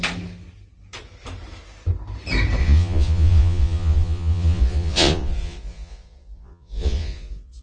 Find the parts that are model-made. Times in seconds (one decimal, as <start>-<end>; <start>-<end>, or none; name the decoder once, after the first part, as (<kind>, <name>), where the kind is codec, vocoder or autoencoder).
2.6-7.6 (vocoder, Vocos)

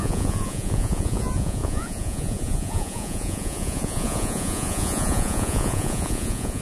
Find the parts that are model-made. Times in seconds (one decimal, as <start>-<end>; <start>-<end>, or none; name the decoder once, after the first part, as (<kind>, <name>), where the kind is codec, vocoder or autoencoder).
0.0-6.6 (vocoder, Vocos)

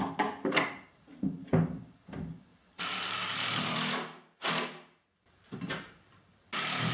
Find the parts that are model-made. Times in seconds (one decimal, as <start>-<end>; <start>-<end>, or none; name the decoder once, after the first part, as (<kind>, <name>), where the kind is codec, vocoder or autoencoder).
2.5-4.5 (vocoder, BigVGAN v2)

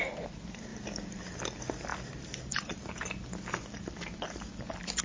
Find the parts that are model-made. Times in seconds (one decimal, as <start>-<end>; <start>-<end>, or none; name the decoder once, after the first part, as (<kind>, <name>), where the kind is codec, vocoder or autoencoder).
none